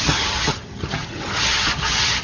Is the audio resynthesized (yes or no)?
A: yes